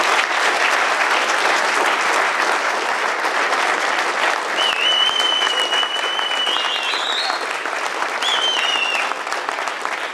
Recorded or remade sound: recorded